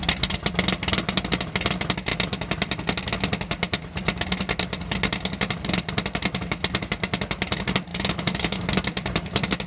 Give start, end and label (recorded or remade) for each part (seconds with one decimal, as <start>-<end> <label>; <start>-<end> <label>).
0.0-7.9 recorded; 7.9-8.6 remade; 8.6-9.7 recorded